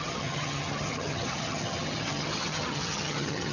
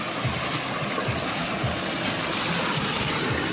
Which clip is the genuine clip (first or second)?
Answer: second